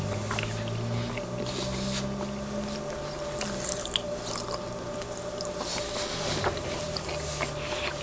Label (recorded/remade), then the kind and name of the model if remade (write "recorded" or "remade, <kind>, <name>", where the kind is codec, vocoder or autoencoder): recorded